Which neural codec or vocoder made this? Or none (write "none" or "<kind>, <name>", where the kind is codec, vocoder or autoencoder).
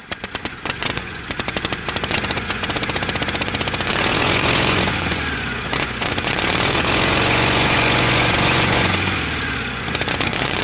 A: vocoder, Vocos